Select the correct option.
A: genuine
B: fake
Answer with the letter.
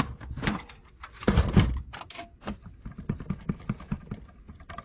A